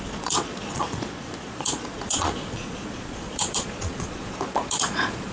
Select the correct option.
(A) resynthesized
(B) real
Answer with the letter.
A